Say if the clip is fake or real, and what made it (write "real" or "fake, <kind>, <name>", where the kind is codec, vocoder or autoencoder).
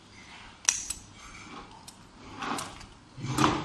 real